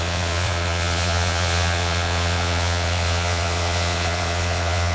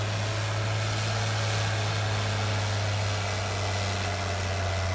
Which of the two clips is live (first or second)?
second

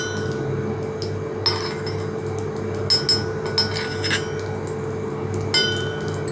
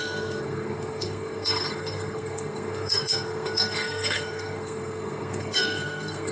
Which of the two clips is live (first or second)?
first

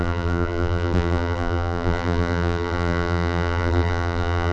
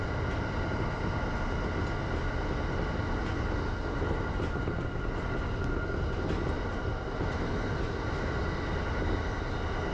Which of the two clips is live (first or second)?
second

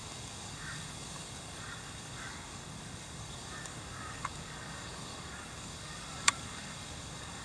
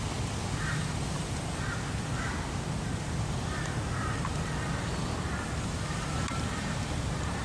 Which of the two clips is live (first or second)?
second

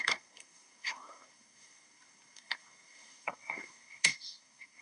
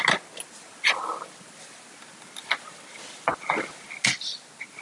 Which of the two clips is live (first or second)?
second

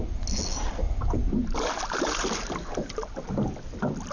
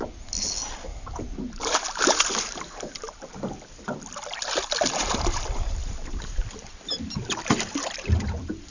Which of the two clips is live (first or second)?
first